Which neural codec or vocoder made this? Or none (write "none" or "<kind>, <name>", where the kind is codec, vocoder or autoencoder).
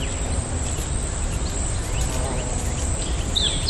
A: vocoder, BigVGAN v2